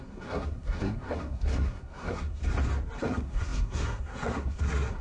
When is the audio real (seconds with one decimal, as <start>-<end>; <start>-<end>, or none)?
2.4-3.0

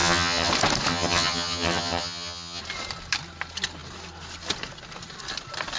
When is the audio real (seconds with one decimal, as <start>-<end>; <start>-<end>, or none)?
0.5-0.9; 2.6-5.8